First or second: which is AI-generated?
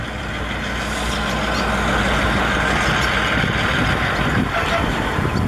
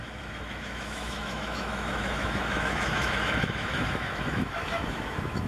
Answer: second